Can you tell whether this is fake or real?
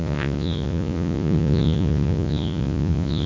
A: fake